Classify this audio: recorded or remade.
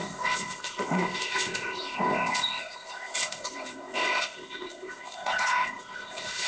remade